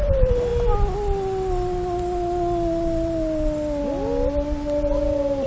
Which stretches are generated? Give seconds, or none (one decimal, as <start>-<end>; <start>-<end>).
none